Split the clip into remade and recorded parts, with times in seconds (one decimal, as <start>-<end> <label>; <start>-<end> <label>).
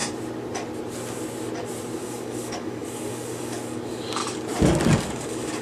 0.0-2.0 recorded; 2.0-4.2 remade; 4.2-5.0 recorded; 5.0-5.6 remade